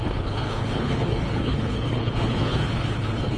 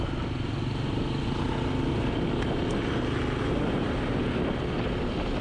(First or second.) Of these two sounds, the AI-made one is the first